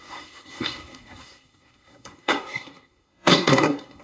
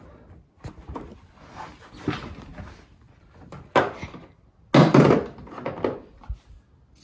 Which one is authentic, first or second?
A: second